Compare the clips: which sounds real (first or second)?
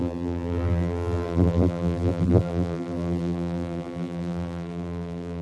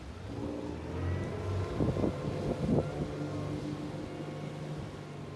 second